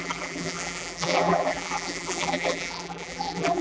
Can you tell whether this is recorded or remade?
remade